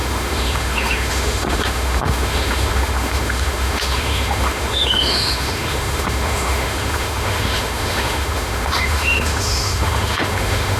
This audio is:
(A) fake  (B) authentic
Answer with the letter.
A